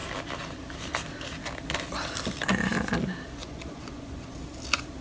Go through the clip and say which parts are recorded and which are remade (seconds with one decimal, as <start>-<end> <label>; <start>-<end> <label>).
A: 0.0-3.4 recorded; 3.4-4.4 remade; 4.4-5.0 recorded